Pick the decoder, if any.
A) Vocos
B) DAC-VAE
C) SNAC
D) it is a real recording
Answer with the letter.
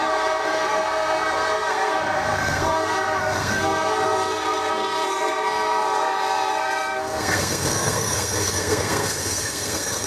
C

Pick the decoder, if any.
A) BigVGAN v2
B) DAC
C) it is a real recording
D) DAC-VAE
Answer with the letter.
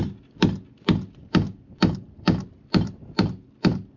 A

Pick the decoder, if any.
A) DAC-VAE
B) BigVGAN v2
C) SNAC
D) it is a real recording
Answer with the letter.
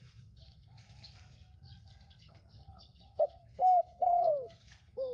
C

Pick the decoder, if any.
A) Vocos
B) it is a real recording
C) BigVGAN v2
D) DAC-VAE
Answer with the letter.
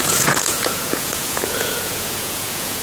A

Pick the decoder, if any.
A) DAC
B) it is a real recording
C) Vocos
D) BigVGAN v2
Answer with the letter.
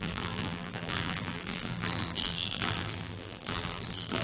D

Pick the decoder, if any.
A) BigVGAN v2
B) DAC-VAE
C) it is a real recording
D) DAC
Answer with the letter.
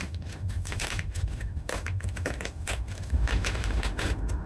B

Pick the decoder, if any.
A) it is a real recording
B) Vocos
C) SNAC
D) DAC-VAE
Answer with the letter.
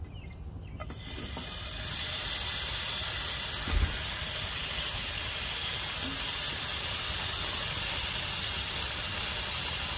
A